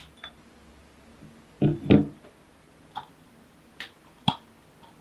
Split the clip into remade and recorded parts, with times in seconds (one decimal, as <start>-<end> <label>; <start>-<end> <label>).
0.0-5.0 recorded